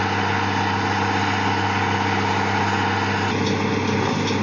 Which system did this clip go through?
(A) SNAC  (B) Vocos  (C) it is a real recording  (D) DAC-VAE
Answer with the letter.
C